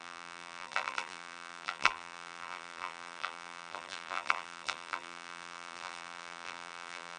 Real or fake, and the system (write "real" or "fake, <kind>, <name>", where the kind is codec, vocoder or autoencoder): fake, vocoder, BigVGAN v2